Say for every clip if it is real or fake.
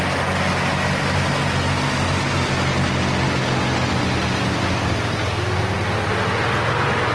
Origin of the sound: real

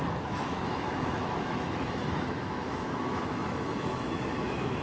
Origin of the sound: fake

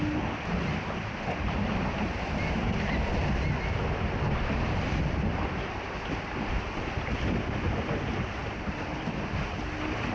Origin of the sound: real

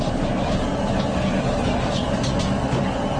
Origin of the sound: real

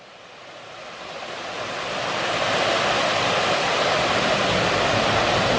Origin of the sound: real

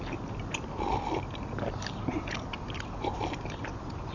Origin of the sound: real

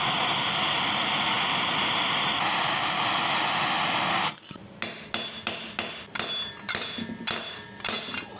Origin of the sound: real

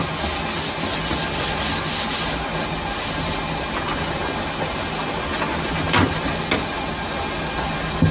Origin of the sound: real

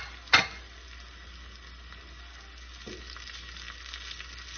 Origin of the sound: real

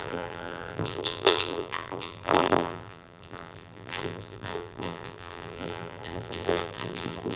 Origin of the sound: fake